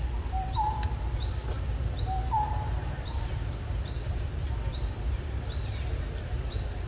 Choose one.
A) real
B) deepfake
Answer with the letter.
A